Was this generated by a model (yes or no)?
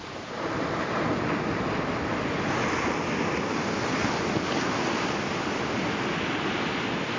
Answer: no